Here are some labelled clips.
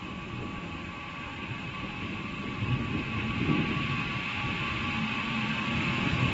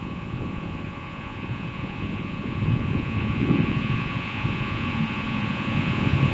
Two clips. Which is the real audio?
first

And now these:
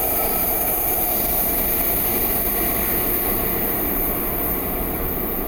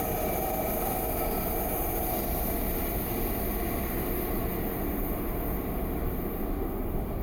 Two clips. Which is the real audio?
second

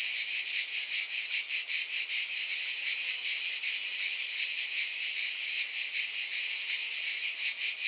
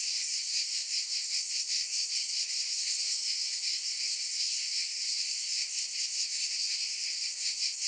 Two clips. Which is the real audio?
first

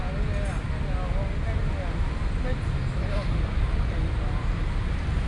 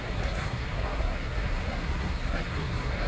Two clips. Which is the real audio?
first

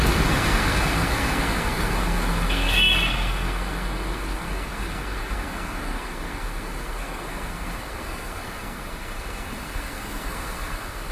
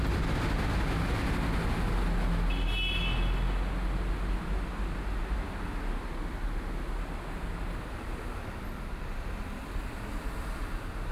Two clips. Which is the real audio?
second